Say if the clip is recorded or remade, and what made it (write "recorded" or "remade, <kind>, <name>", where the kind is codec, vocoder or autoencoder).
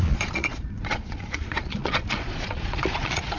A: remade, vocoder, Vocos